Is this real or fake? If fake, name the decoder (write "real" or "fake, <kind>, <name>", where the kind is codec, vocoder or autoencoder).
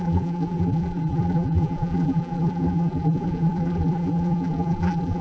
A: fake, vocoder, BigVGAN v2